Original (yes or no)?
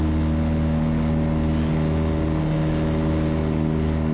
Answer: yes